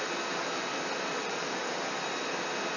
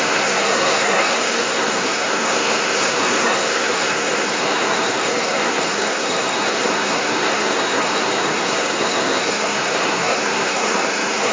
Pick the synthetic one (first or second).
second